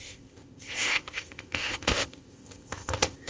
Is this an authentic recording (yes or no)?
no